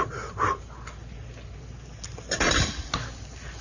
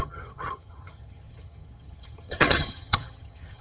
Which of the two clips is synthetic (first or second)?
second